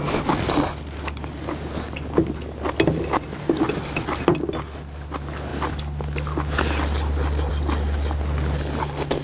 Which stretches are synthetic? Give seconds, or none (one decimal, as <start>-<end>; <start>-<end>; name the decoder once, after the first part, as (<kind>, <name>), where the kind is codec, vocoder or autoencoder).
none